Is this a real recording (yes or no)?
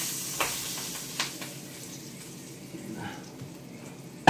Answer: yes